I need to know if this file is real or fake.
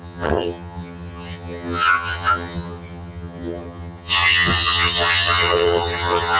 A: fake